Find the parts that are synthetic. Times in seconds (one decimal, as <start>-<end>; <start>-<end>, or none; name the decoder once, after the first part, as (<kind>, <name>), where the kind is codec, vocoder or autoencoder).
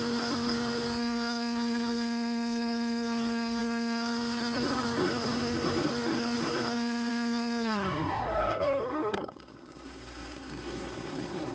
0.0-11.5 (codec, SNAC)